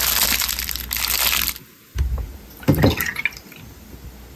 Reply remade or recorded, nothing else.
recorded